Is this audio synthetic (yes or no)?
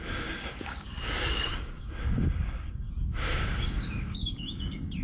yes